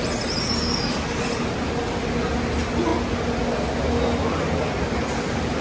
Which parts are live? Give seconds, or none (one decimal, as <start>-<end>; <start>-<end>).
0.0-5.6